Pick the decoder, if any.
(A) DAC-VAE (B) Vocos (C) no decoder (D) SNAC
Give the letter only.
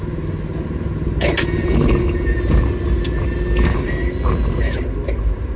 C